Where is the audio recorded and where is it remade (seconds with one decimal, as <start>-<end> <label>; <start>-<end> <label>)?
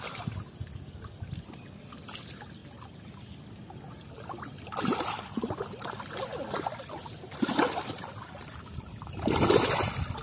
0.0-10.2 recorded